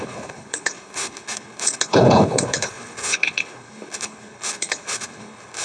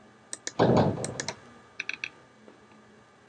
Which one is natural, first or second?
second